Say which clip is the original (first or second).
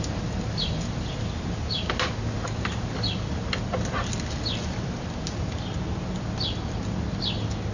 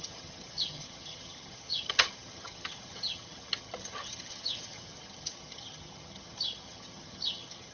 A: first